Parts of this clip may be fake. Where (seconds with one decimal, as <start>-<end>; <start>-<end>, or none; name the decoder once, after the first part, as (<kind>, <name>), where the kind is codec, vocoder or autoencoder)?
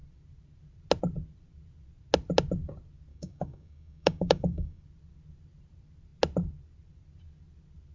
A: 3.1-4.8 (codec, DAC)